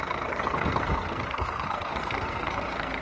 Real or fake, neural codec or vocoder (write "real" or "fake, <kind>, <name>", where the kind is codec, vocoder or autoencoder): fake, codec, SNAC